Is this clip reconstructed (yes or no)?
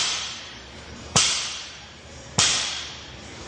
yes